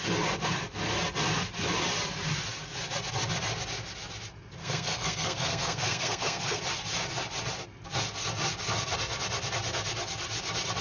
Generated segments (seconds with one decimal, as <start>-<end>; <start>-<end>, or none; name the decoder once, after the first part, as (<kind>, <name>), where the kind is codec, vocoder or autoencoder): 4.6-6.6 (codec, SNAC)